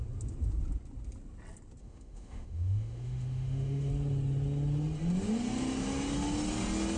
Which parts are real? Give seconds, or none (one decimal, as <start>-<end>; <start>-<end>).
0.0-1.8; 3.9-7.0